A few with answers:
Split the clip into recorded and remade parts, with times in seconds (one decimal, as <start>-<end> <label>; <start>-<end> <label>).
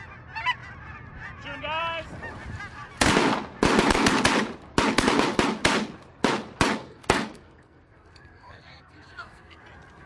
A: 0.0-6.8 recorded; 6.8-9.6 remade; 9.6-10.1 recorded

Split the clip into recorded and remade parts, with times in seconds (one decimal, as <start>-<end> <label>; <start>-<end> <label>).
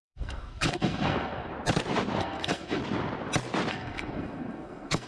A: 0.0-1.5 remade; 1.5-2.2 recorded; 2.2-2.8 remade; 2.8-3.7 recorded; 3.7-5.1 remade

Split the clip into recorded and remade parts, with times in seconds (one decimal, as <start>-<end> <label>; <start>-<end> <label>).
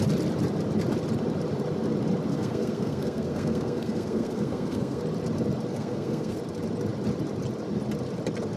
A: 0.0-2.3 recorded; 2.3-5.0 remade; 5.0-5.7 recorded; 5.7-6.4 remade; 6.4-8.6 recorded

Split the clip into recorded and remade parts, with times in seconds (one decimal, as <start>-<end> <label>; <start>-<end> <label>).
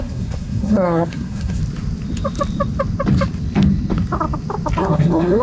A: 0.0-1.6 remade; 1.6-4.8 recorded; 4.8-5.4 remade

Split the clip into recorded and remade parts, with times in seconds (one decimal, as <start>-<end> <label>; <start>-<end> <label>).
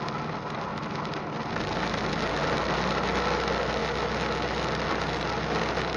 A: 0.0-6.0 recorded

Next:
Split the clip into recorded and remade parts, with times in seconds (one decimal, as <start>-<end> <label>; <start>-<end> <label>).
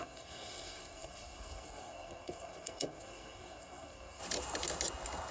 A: 0.0-4.2 remade; 4.2-5.3 recorded